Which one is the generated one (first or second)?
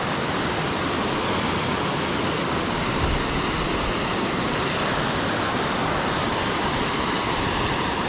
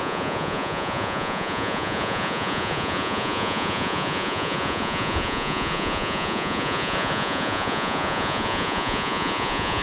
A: second